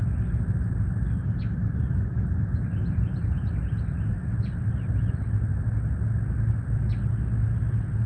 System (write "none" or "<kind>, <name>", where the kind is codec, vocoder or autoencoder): none